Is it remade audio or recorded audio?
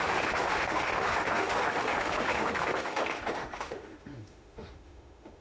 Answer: remade